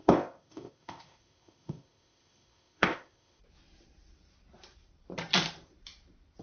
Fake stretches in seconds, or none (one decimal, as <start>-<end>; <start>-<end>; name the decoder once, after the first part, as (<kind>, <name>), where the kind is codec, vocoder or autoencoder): 0.0-3.4 (codec, ZipCodec)

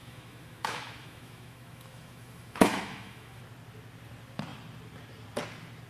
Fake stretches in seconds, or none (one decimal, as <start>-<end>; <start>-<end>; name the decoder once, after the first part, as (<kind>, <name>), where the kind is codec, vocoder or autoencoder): 0.0-3.4 (autoencoder, DAC-VAE)

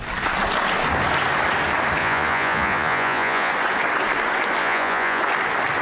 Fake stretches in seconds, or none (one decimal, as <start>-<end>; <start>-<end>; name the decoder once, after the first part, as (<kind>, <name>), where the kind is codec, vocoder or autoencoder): 2.0-3.5 (vocoder, Vocos); 4.6-5.2

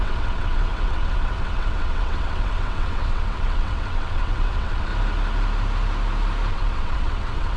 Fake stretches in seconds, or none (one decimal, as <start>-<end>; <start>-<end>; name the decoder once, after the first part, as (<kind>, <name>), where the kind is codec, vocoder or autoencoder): 0.0-4.9 (vocoder, WaveNeXt); 6.5-7.6

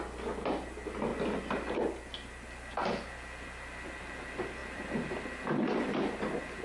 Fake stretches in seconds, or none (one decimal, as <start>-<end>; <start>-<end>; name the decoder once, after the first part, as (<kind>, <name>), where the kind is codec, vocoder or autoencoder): 4.6-6.6 (vocoder, BigVGAN v2)